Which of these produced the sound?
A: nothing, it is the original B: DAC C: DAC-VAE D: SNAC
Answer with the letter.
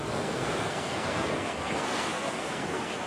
D